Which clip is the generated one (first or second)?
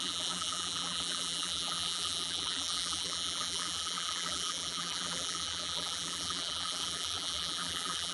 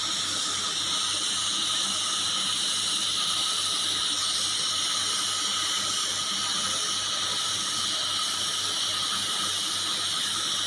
first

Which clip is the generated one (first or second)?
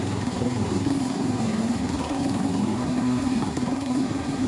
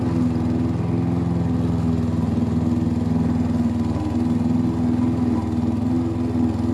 first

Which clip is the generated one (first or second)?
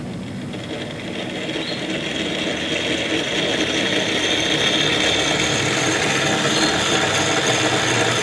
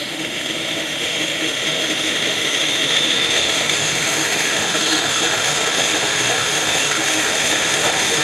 second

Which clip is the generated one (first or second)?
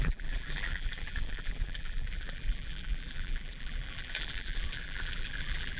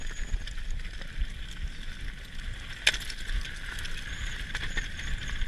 first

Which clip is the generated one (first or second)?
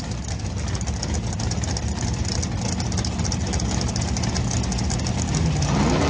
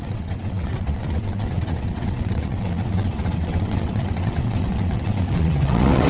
second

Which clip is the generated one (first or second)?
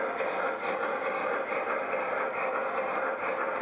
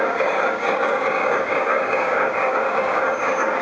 second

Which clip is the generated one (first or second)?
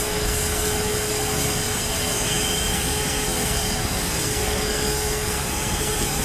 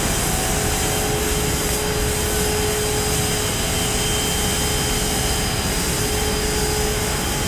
first